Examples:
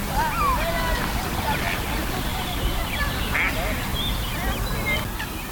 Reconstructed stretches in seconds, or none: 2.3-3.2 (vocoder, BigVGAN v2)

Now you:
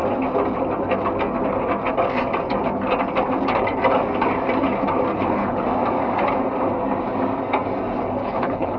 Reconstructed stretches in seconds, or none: 5.1-5.6 (codec, HILCodec); 8.2-8.8

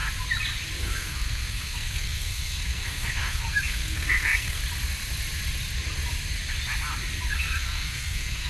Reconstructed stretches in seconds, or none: 0.8-4.6 (codec, SNAC); 7.3-8.5

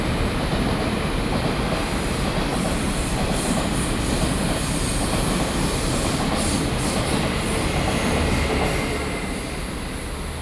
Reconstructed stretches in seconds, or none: none

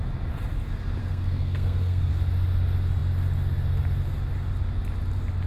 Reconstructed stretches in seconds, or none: 1.0-2.1 (codec, SNAC)